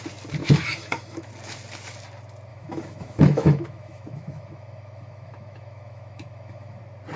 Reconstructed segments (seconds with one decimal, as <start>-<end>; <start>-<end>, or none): 0.4-1.3; 2.5-6.8